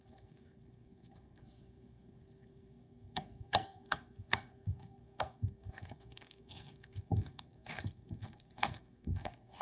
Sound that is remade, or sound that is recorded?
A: remade